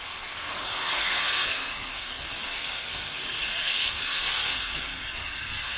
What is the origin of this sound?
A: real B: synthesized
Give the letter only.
B